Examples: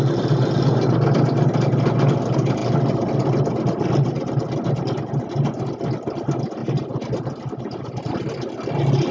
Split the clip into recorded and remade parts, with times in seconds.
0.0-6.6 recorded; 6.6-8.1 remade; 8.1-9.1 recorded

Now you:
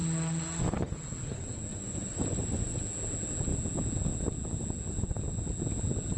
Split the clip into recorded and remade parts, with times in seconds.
0.0-1.7 recorded; 1.7-2.8 remade; 2.8-6.2 recorded

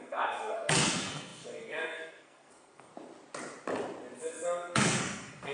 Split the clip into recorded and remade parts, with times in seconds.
0.0-2.9 remade; 2.9-4.2 recorded; 4.2-5.5 remade